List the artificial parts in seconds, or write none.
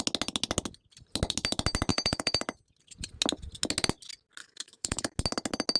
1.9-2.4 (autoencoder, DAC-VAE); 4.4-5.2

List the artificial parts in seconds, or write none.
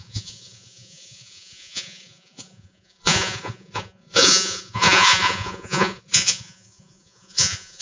0.0-7.8 (vocoder, Vocos)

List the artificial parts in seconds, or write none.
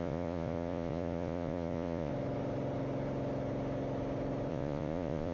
0.0-2.1 (vocoder, Vocos); 4.5-5.3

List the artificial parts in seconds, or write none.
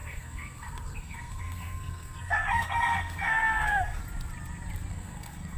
0.0-4.0 (codec, SNAC); 4.9-5.6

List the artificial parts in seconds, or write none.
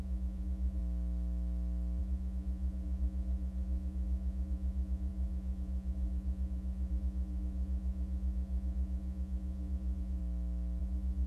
0.0-0.8 (vocoder, Vocos); 2.0-10.2; 10.8-11.3